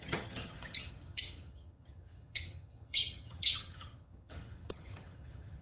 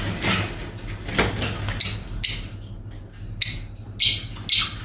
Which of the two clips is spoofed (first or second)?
first